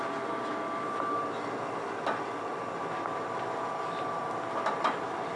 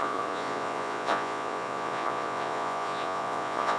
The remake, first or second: second